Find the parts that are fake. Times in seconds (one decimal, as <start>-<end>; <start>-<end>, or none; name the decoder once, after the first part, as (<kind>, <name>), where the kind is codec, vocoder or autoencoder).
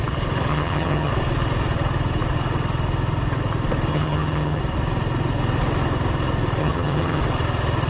0.5-1.1 (vocoder, HiFi-GAN); 3.9-4.6; 6.6-7.2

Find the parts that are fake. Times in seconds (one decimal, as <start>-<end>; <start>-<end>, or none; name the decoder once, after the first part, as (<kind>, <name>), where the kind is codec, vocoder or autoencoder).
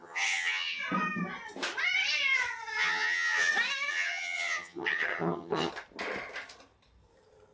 0.0-0.8 (vocoder, HiFi-GAN); 2.8-3.5; 3.9-5.7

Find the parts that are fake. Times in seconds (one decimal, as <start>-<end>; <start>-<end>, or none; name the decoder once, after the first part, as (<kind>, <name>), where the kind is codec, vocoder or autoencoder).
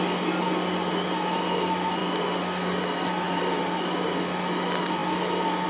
none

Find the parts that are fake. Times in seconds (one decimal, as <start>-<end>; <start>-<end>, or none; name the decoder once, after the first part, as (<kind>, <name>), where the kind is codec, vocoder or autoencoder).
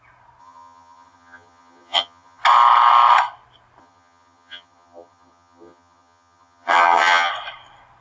0.4-2.4 (vocoder, HiFi-GAN); 3.8-7.3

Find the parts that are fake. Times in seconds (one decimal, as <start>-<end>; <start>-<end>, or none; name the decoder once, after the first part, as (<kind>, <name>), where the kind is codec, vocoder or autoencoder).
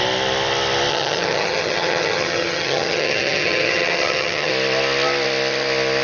0.9-4.5 (vocoder, HiFi-GAN)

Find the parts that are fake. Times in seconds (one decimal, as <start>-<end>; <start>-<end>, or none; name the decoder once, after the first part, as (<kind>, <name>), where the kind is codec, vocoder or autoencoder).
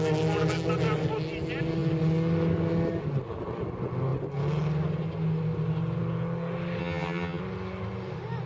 6.8-7.4 (vocoder, HiFi-GAN)